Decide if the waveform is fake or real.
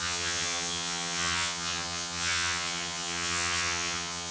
fake